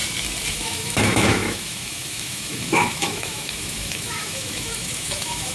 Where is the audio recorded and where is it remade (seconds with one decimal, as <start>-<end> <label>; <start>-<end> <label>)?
0.0-0.5 recorded; 0.5-5.5 remade